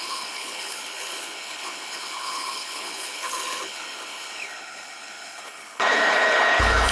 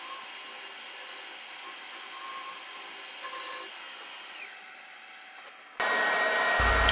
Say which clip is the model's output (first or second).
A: first